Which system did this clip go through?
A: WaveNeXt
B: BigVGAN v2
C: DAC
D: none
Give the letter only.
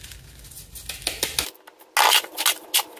D